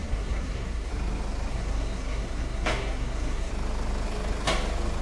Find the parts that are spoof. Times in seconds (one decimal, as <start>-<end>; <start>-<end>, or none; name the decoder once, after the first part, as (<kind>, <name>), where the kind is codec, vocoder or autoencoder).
0.0-0.9 (codec, SNAC); 1.5-3.5